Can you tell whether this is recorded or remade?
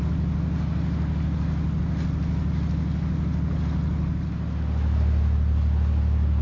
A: recorded